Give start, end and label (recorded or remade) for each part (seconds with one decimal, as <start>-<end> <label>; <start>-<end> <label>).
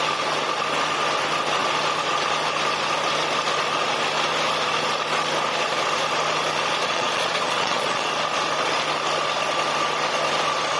0.0-6.8 recorded; 6.8-8.1 remade; 8.1-10.8 recorded